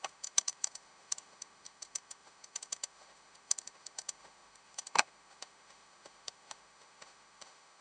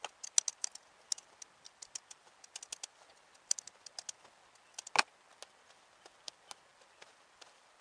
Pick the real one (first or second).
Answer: second